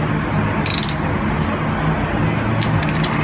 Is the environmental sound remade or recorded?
recorded